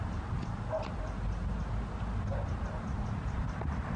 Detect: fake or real real